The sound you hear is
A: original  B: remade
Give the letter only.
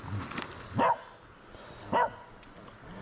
A